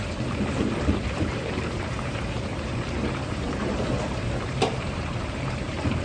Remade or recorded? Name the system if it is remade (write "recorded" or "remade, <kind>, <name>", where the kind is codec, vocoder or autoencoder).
remade, vocoder, BigVGAN v2